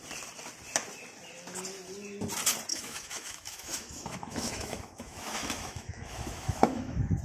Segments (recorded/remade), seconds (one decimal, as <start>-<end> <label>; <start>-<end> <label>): 0.0-2.7 recorded; 2.7-7.2 remade